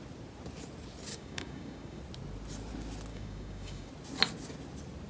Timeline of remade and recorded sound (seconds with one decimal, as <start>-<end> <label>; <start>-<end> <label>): 0.0-1.1 recorded; 1.1-2.0 remade; 2.0-3.1 recorded; 3.1-3.9 remade; 3.9-5.1 recorded